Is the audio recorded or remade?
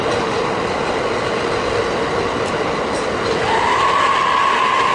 recorded